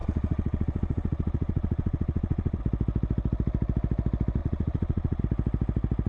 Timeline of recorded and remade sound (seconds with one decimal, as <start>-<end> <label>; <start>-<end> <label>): 0.0-2.6 remade; 2.6-4.4 recorded; 4.4-5.2 remade; 5.2-6.1 recorded